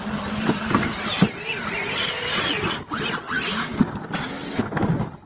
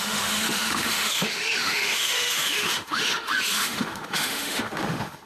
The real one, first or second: first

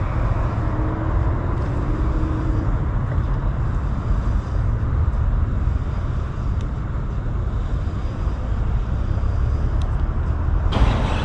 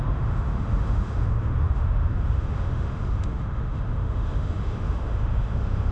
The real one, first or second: first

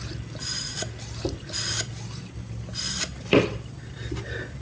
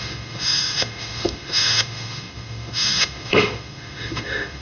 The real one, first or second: first